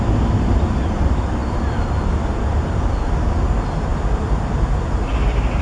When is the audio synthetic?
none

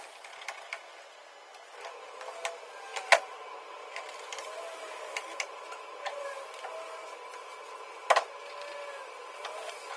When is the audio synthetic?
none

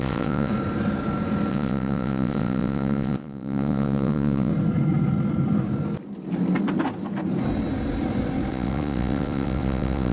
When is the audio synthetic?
0.0-0.5 (vocoder, WaveNeXt); 1.5-4.5; 8.5-10.1